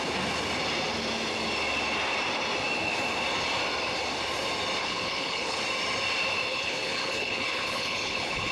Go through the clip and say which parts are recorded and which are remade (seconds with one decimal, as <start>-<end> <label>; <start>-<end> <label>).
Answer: 0.0-4.8 recorded; 4.8-5.6 remade; 5.6-6.5 recorded; 6.5-8.5 remade